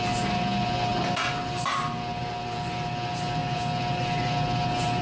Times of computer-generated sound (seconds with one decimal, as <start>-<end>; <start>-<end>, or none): none